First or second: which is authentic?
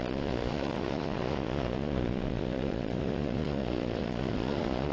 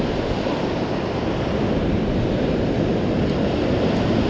second